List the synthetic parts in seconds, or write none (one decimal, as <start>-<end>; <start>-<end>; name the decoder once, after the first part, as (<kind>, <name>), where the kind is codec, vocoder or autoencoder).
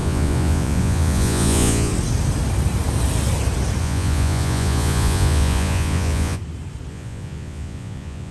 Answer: 0.0-1.9 (vocoder, Vocos); 3.8-6.4; 6.9-8.3